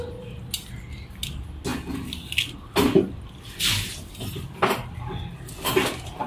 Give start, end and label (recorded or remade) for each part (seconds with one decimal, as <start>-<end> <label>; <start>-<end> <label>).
0.0-6.3 recorded